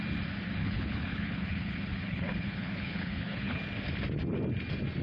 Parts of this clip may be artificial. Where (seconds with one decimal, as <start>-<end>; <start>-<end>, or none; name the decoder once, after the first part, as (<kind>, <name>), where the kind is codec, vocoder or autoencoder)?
0.6-3.6 (codec, HILCodec)